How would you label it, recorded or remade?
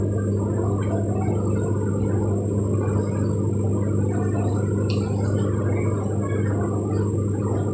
recorded